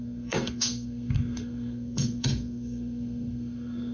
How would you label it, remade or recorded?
remade